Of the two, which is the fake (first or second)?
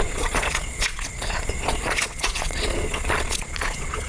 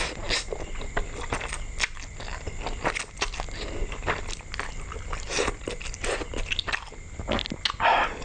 first